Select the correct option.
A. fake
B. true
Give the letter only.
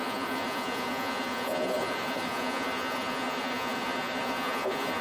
A